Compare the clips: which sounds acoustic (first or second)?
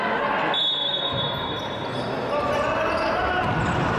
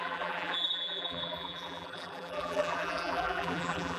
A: first